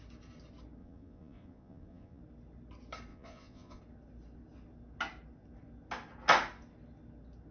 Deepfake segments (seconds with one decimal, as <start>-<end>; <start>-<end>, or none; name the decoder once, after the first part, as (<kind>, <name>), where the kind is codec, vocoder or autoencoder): 0.8-2.2 (vocoder, Vocos); 3.1-3.8